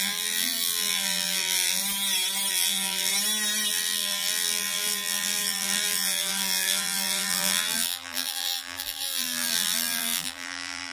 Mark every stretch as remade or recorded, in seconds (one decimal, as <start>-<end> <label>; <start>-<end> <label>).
0.0-1.8 remade; 1.8-2.5 recorded; 2.5-3.1 remade; 3.1-3.7 recorded; 3.7-10.9 remade